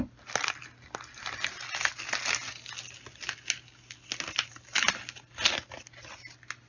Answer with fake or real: real